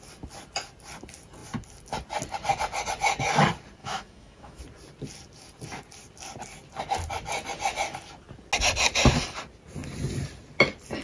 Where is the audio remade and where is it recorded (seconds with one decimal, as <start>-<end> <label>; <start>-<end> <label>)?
0.0-3.8 recorded; 3.8-4.6 remade; 4.6-11.0 recorded